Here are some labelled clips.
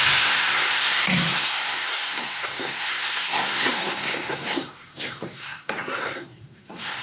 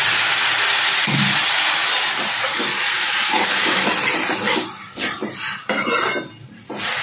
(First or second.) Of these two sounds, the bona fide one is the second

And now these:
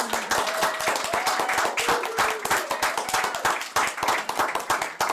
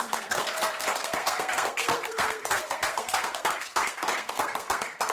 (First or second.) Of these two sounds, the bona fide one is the first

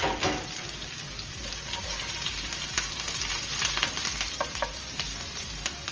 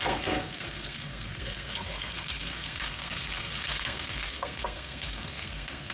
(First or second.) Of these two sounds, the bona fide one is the first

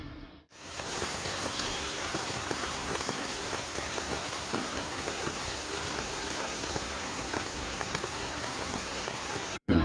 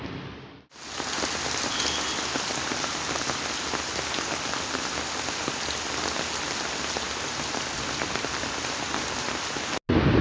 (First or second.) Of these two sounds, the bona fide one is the second